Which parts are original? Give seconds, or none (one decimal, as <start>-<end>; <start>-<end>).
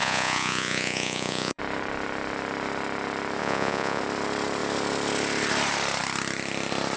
1.6-3.4; 4.0-7.0